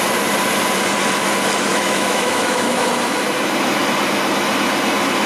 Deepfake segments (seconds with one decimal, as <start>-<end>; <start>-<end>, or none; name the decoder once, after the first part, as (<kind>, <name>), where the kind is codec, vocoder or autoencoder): 1.7-2.8 (autoencoder, DAC-VAE)